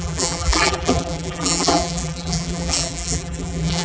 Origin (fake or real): fake